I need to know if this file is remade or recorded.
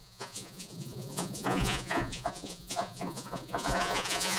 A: remade